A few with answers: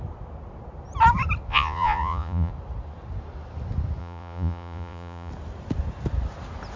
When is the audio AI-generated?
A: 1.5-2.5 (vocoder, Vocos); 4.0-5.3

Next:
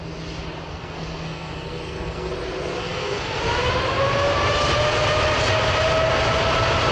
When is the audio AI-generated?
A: 0.7-2.3 (codec, SNAC); 2.8-3.4

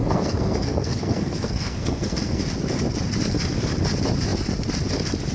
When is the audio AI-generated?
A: 0.0-2.4 (codec, SNAC)

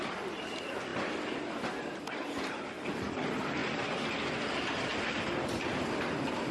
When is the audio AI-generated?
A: 0.0-0.9 (vocoder, BigVGAN v2); 2.0-3.6; 4.4-4.9; 6.0-6.5

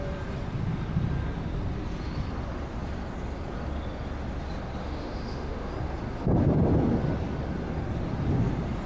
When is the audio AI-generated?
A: 4.8-5.7 (autoencoder, DAC-VAE)